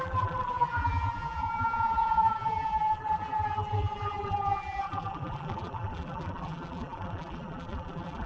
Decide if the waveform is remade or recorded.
remade